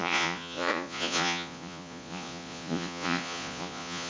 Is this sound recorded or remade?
remade